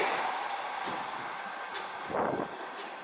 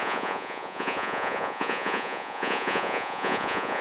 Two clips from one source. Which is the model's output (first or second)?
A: second